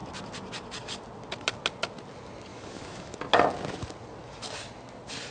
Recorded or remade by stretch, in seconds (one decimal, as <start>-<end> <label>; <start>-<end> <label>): 0.0-2.5 recorded; 2.5-3.2 remade; 3.2-5.3 recorded